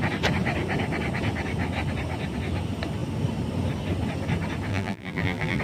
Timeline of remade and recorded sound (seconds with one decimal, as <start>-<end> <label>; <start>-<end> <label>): 0.0-4.7 recorded; 4.7-5.6 remade